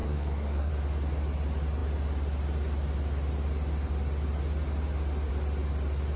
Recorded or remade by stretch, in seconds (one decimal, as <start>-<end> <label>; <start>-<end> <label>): 0.0-0.7 remade; 0.7-6.2 recorded

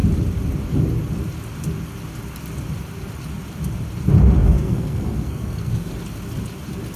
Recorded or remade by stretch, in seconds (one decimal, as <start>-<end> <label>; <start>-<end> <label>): 0.0-4.4 recorded; 4.4-5.9 remade; 5.9-7.0 recorded